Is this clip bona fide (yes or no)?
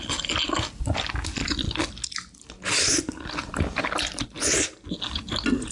yes